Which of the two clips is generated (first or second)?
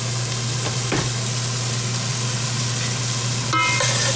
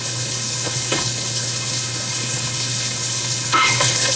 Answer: second